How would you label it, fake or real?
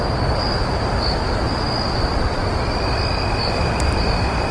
real